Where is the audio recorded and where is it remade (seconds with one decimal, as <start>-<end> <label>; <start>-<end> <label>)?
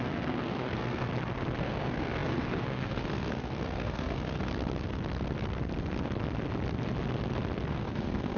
0.0-1.1 remade; 1.1-1.6 recorded; 1.6-4.5 remade; 4.5-7.7 recorded; 7.7-8.4 remade